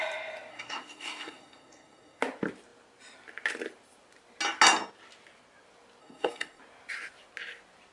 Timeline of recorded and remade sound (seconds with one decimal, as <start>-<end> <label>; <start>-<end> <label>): 0.0-0.5 recorded; 0.5-2.2 remade; 2.2-6.0 recorded; 6.0-6.6 remade; 6.6-7.9 recorded